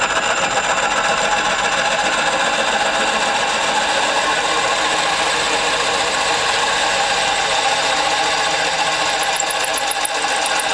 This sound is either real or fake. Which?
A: real